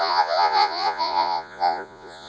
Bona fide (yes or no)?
no